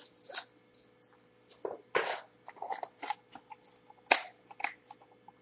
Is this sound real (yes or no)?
yes